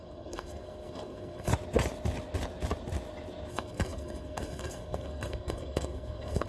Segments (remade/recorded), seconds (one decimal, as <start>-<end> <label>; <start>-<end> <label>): 0.0-1.5 remade; 1.5-3.5 recorded; 3.5-6.5 remade